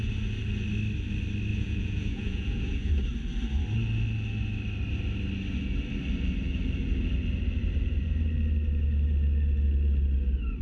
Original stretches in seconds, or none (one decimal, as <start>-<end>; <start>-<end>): 0.0-1.5; 2.9-10.6